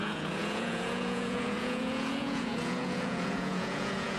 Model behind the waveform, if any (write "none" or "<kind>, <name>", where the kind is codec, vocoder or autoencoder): vocoder, Vocos